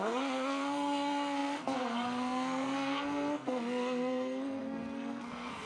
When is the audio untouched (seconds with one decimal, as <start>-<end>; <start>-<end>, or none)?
none